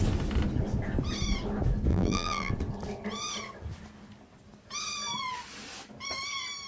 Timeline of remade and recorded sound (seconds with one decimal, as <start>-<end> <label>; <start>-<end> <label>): 0.0-1.9 recorded; 1.9-2.5 remade; 2.5-6.7 recorded